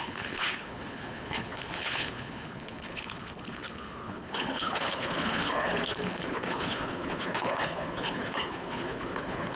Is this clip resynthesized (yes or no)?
yes